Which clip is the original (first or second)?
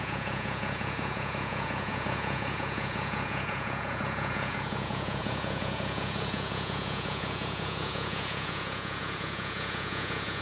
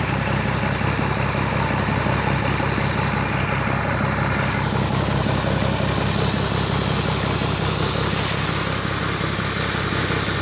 second